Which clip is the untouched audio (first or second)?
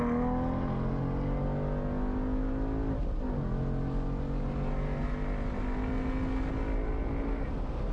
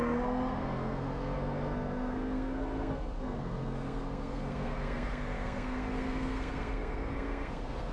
first